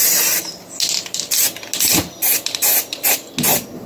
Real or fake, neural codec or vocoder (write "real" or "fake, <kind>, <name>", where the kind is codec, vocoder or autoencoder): real